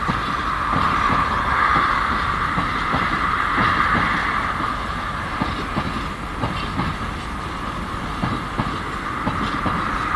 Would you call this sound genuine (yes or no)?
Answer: yes